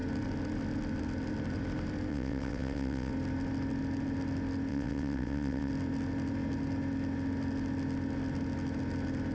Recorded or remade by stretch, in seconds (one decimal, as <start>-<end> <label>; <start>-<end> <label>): 0.0-2.1 recorded; 2.1-3.1 remade; 3.1-4.7 recorded; 4.7-5.7 remade; 5.7-9.3 recorded